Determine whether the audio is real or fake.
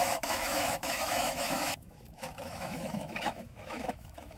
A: fake